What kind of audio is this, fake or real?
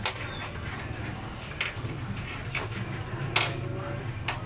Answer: real